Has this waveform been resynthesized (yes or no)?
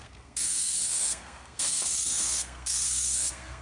yes